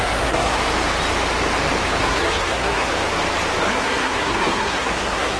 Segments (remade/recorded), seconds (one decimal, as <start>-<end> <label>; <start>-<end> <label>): 0.0-0.6 remade; 0.6-2.0 recorded; 2.0-2.9 remade; 2.9-3.7 recorded; 3.7-5.4 remade